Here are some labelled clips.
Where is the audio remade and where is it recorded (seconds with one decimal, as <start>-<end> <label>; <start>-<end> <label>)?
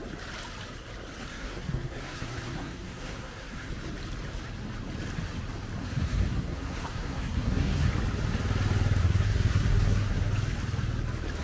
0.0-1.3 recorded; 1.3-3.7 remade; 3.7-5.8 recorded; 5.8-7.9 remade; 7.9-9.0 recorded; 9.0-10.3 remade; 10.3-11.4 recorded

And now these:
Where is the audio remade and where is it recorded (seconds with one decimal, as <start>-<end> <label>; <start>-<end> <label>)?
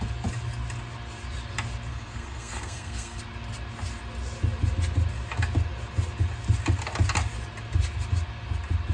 0.0-1.9 recorded; 1.9-3.2 remade; 3.2-8.9 recorded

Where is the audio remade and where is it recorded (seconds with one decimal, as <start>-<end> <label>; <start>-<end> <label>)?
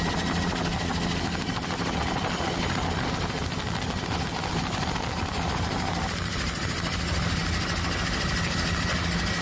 0.0-9.4 recorded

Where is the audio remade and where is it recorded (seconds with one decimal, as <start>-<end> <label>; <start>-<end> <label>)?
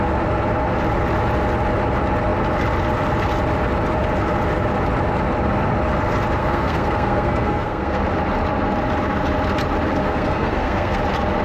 0.0-6.4 recorded; 6.4-8.0 remade; 8.0-10.0 recorded; 10.0-11.0 remade; 11.0-11.4 recorded